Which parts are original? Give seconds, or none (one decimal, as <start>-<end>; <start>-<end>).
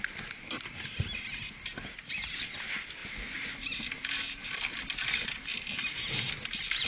0.0-6.9